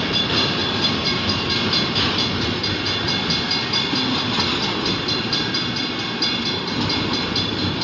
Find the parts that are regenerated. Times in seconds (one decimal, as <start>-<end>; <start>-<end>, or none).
none